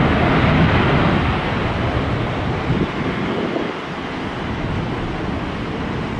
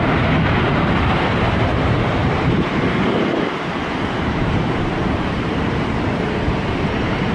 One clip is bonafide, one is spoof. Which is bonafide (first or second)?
first